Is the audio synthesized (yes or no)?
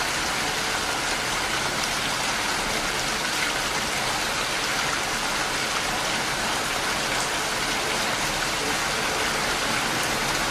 no